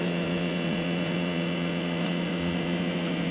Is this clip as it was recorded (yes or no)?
no